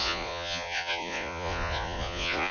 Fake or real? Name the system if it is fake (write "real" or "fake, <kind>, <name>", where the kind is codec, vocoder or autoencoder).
fake, vocoder, Vocos